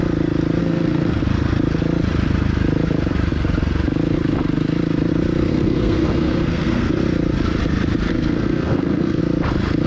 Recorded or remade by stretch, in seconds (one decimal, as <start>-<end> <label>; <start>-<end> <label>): 0.0-0.6 recorded; 0.6-1.2 remade; 1.2-5.5 recorded; 5.5-6.9 remade; 6.9-8.1 recorded; 8.1-9.2 remade; 9.2-9.9 recorded

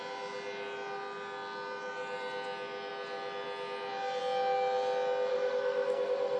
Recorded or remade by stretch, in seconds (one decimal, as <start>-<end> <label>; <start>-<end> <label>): 0.0-5.3 recorded; 5.3-6.4 remade

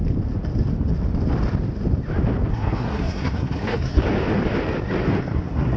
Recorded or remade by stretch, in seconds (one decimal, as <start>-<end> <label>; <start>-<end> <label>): 0.0-2.5 recorded; 2.5-4.0 remade; 4.0-5.2 recorded; 5.2-5.8 remade

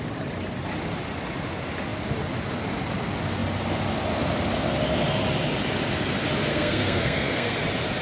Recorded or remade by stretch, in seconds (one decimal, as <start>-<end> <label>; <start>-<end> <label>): 0.0-6.5 recorded; 6.5-7.6 remade; 7.6-8.0 recorded

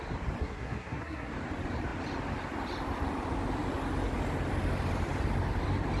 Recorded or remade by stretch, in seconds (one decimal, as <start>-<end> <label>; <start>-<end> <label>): 0.0-0.4 recorded; 0.4-1.3 remade; 1.3-6.0 recorded